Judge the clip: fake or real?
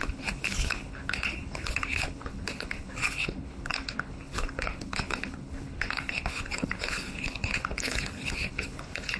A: fake